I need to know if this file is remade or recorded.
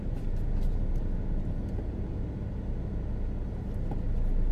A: recorded